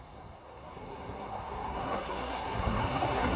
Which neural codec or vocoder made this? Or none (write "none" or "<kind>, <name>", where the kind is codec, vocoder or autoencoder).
codec, SNAC